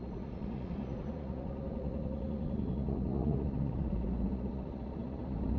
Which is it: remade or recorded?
remade